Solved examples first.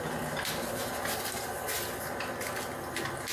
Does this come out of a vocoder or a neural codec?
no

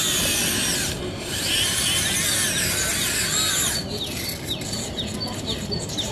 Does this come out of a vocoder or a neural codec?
no